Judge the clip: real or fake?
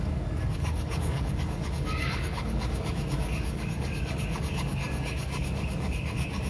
fake